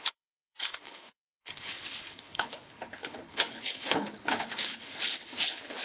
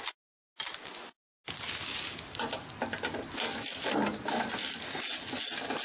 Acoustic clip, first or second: second